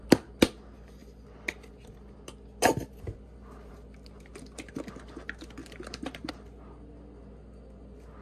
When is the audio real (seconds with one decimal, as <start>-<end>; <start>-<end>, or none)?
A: 0.0-5.6; 6.3-8.2